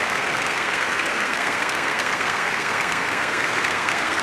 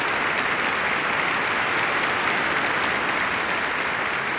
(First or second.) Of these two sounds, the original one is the second